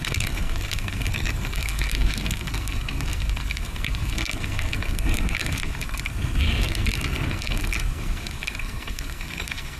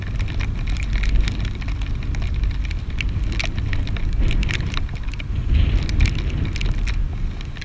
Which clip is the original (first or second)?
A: second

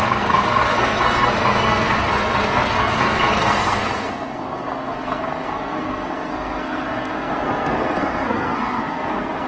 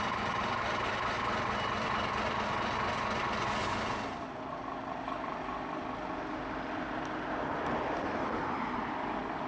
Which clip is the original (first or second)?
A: second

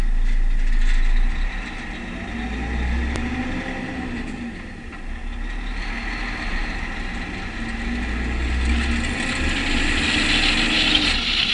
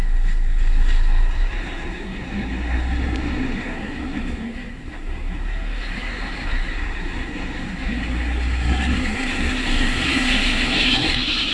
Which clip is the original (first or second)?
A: first